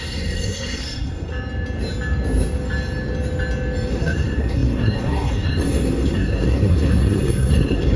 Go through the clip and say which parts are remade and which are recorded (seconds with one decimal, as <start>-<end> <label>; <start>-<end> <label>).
0.0-1.3 remade; 1.3-3.9 recorded; 3.9-8.0 remade